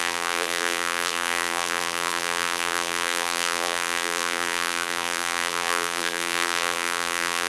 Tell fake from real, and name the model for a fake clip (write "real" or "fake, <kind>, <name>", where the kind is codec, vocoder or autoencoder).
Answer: fake, vocoder, BigVGAN v2